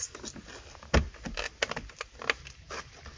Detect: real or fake real